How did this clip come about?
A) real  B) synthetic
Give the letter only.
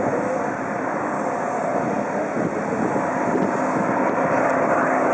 A